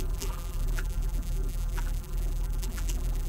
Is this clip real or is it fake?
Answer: fake